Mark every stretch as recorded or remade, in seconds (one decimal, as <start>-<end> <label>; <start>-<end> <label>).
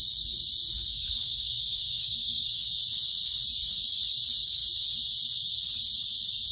0.0-0.9 recorded; 0.9-2.7 remade; 2.7-6.5 recorded